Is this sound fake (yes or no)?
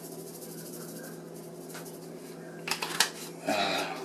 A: no